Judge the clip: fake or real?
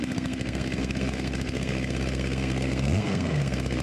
fake